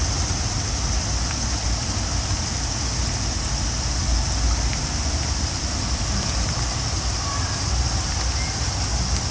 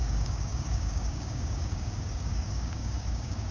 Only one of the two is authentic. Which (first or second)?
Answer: first